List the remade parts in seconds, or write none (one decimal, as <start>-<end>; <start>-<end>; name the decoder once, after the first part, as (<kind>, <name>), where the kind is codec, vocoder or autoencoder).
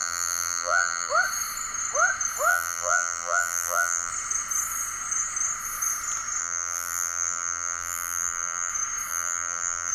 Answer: 0.0-1.1 (vocoder, BigVGAN v2); 2.5-4.1; 6.4-8.7; 9.1-9.9